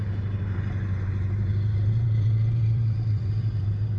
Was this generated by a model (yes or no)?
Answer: yes